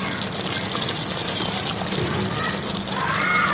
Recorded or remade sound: recorded